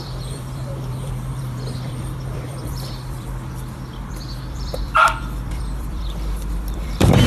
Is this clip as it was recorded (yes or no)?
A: no